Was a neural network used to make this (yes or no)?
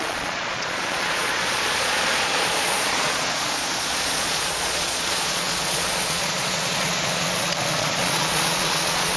yes